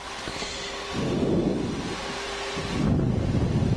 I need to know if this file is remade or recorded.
recorded